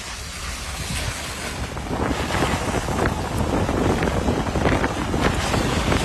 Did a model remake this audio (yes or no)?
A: no